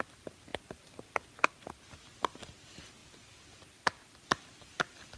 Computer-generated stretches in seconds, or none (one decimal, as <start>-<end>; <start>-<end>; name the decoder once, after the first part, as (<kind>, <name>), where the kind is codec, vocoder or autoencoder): none